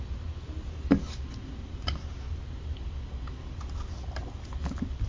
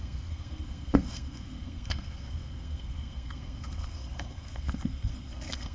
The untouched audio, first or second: first